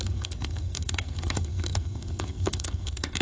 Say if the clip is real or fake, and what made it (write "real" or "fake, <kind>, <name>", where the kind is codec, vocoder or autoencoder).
fake, codec, SNAC